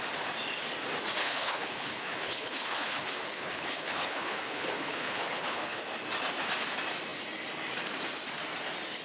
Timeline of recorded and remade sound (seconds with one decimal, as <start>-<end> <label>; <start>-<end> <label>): 0.0-1.2 recorded; 1.2-5.8 remade; 5.8-9.0 recorded